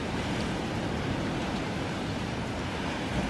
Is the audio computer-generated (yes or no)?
no